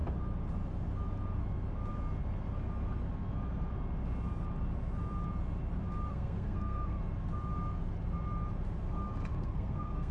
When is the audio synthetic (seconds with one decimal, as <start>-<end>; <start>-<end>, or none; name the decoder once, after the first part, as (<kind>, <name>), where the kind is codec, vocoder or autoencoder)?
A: 6.1-7.0 (codec, SNAC); 9.3-10.1